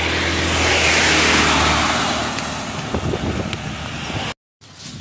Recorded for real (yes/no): yes